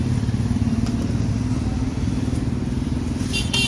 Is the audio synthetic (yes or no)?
no